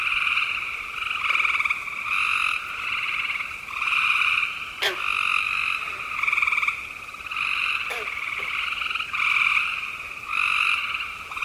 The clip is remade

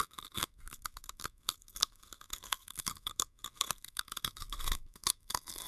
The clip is remade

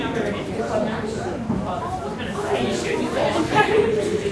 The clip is recorded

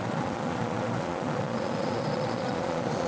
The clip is remade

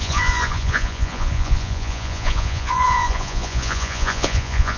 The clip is remade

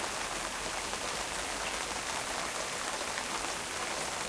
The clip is recorded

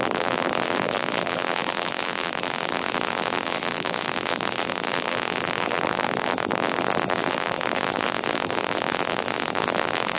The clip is remade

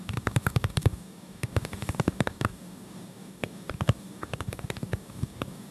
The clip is remade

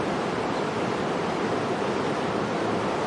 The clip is recorded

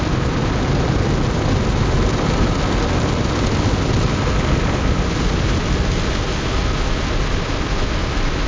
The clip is recorded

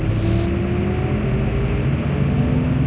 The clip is recorded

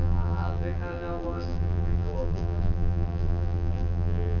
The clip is remade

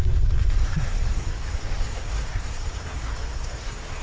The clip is remade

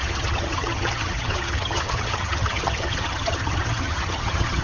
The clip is remade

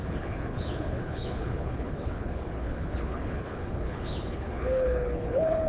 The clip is remade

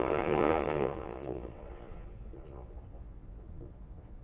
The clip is remade